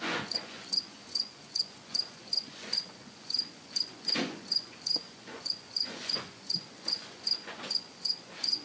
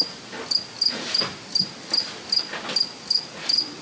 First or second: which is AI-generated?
first